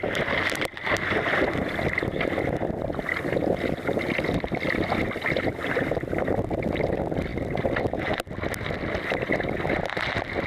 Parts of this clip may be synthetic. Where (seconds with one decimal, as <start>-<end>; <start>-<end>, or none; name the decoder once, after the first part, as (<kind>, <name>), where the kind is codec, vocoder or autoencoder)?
none